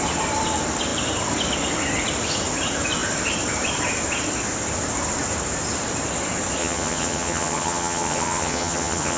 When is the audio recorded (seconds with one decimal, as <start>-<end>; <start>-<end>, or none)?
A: 0.0-6.6

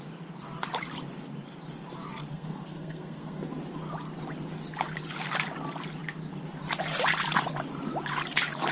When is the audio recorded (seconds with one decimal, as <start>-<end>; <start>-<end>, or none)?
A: 0.0-2.3; 3.5-8.7

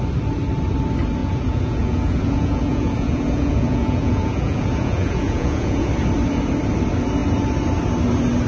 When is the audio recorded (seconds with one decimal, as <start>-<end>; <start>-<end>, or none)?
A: 0.0-1.2; 5.9-8.5

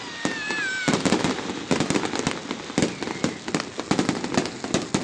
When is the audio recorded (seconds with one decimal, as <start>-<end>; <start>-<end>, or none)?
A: 0.0-5.0